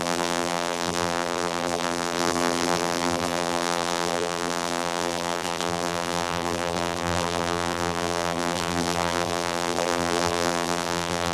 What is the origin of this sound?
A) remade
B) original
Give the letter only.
A